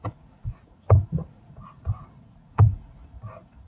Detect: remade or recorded remade